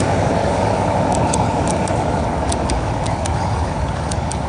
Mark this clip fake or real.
fake